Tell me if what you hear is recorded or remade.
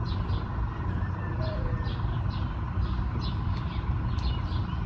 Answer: recorded